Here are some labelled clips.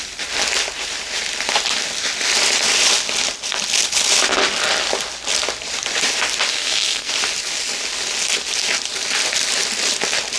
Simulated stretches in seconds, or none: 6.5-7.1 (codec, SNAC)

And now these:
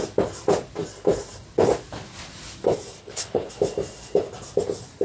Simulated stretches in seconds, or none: 3.0-3.5 (codec, HILCodec)

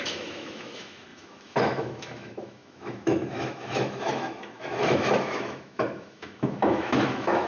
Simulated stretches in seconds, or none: 0.0-7.5 (autoencoder, DAC-VAE)

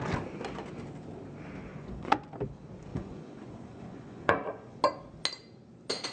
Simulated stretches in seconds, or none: 1.7-2.2 (vocoder, Vocos); 2.9-4.8

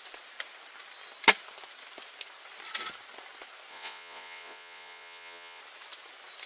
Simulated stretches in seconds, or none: 3.7-5.6 (vocoder, Vocos)

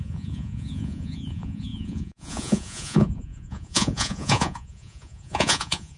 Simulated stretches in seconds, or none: 0.0-6.0 (vocoder, Vocos)

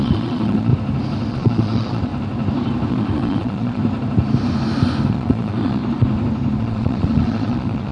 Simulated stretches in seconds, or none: 0.0-0.7 (vocoder, Vocos); 1.3-2.1; 2.9-3.8; 5.1-5.8; 6.6-7.9

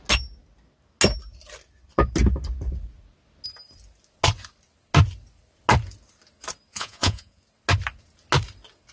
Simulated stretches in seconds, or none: 6.7-7.4 (vocoder, Vocos)